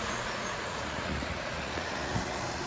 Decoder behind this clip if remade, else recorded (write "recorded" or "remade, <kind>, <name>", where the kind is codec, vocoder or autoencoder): remade, vocoder, Vocos